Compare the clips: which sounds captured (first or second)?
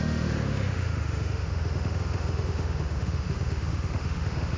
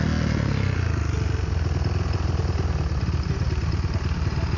second